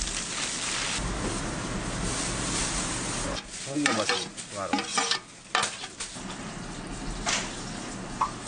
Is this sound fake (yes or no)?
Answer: no